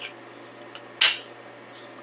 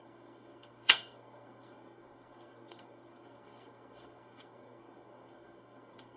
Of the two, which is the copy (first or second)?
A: second